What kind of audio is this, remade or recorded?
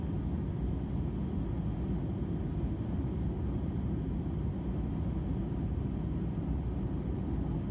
recorded